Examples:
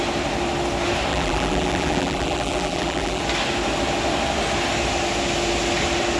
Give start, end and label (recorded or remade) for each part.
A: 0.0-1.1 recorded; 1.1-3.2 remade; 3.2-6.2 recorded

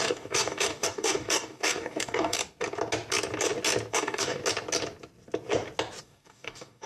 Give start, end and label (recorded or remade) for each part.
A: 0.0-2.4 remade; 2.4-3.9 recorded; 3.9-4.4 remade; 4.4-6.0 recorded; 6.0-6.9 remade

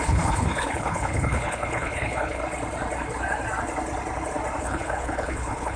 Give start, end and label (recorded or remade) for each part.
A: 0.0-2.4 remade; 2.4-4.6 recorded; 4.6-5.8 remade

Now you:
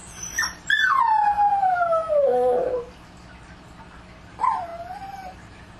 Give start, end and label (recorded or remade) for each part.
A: 0.0-2.0 remade; 2.0-4.3 recorded; 4.3-5.8 remade

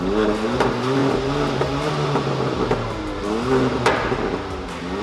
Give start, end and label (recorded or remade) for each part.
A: 0.0-5.0 recorded